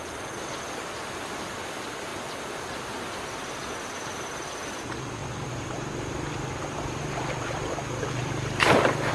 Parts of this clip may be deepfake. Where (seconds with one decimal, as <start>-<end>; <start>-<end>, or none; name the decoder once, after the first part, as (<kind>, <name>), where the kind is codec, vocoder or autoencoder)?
0.0-2.1 (vocoder, BigVGAN v2); 3.0-9.1